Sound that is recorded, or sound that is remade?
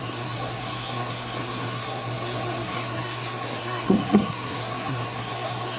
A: remade